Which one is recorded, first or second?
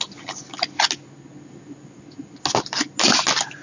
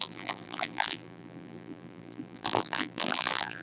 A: first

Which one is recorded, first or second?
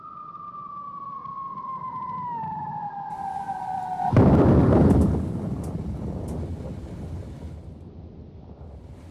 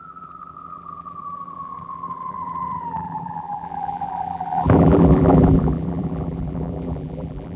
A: first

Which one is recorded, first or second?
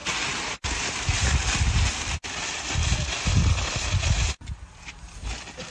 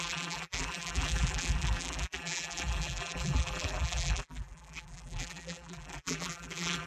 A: first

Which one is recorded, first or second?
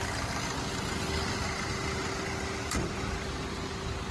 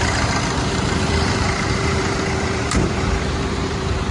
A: first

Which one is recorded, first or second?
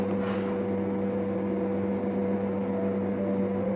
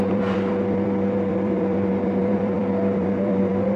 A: first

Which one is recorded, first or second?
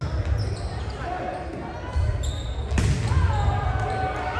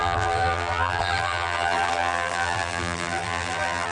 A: first